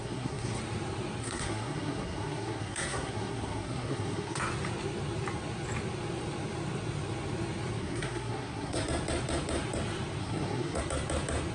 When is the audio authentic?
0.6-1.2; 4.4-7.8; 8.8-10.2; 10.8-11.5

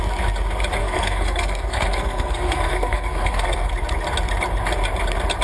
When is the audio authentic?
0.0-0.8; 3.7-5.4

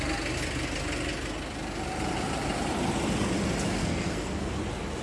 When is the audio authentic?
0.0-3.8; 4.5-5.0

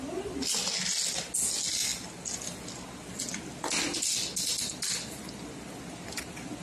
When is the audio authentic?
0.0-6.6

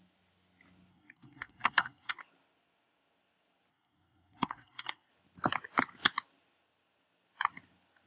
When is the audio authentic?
0.0-0.9; 2.2-3.7; 5.1-8.1